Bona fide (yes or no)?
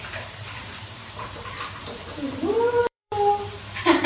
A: no